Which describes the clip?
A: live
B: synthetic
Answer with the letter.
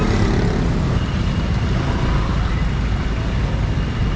A